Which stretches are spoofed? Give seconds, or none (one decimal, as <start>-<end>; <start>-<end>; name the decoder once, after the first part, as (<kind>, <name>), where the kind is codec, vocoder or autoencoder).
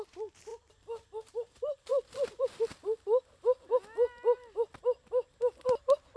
none